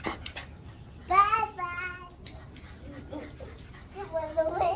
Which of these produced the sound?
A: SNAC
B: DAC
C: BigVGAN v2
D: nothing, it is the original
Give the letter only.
D